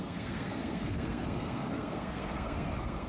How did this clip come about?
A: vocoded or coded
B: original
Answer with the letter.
A